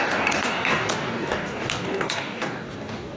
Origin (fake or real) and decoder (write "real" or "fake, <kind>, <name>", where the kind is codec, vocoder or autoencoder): fake, codec, DAC